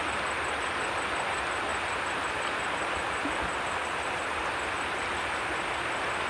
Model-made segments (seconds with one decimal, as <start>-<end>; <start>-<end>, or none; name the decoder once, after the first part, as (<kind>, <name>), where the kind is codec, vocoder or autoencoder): none